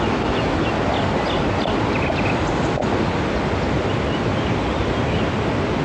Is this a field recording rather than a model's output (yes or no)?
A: yes